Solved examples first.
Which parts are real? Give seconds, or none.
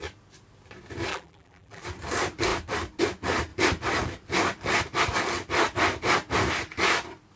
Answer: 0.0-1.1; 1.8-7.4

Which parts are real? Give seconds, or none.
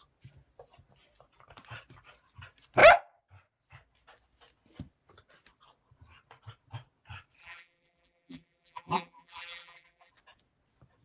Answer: 0.0-7.4; 10.1-11.0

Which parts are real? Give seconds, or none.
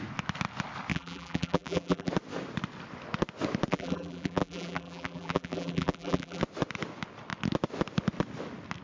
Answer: 0.0-0.9; 2.1-3.7; 6.4-8.8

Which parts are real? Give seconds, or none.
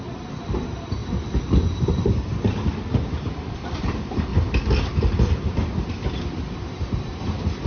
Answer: 1.0-3.1; 4.3-6.7